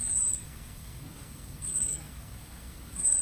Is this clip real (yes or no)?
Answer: no